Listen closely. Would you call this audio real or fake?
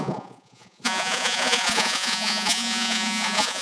fake